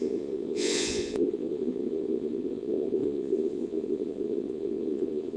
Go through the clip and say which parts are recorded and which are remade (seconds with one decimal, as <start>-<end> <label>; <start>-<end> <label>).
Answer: 0.0-5.4 remade